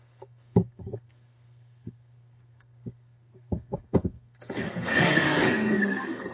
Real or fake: fake